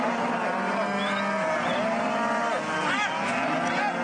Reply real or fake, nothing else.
real